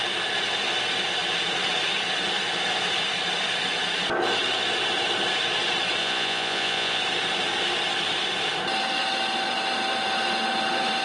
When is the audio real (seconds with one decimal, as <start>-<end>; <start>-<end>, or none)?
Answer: 0.0-6.0; 7.0-11.0